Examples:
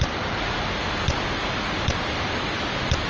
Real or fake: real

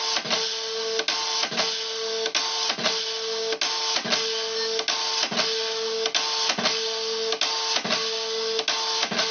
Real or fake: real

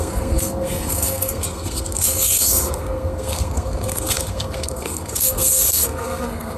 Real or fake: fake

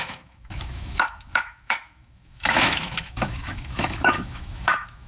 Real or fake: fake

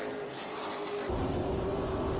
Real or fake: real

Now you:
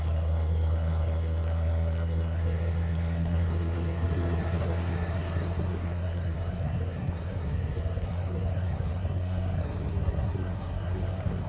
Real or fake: fake